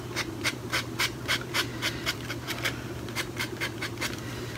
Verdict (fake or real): fake